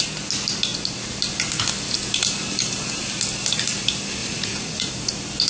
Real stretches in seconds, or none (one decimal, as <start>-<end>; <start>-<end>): 0.0-4.2; 4.9-5.5